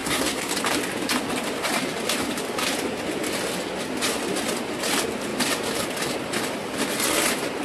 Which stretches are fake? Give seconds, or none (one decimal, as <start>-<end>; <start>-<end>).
0.0-0.5